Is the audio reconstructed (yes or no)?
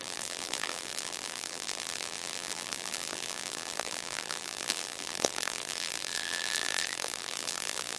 yes